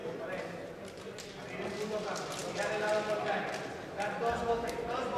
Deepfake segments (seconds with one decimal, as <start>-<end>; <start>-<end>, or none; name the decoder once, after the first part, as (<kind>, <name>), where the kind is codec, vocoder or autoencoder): 0.0-0.7 (vocoder, BigVGAN v2)